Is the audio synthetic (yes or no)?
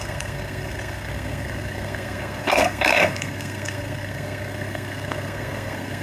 yes